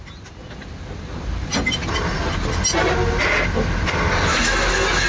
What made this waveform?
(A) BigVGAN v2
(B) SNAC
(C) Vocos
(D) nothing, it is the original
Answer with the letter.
D